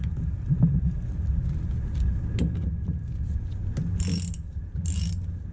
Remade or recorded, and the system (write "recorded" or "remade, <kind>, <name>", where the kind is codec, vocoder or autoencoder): recorded